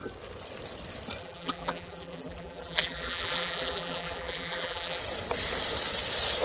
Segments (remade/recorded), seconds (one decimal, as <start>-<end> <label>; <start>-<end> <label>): 0.0-1.2 recorded; 1.2-5.0 remade; 5.0-6.4 recorded